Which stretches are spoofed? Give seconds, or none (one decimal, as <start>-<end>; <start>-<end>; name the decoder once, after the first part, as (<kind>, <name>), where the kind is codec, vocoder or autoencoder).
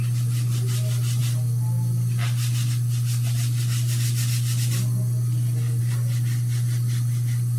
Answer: none